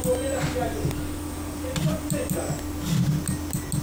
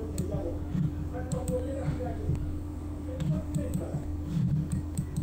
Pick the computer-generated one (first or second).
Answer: second